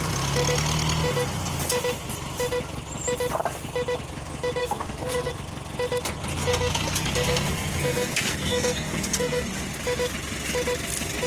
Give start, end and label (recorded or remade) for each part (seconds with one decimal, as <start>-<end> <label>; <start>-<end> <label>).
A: 0.0-4.6 recorded; 4.6-5.3 remade; 5.3-6.5 recorded; 6.5-9.5 remade; 9.5-11.3 recorded